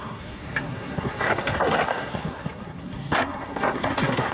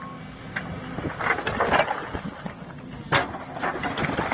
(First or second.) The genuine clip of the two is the second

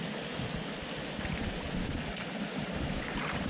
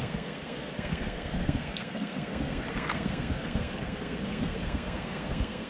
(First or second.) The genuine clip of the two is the first